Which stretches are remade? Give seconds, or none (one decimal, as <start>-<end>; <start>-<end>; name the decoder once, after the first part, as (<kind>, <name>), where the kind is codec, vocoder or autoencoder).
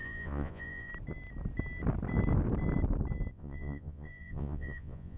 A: 0.0-0.9 (vocoder, Vocos); 3.3-5.2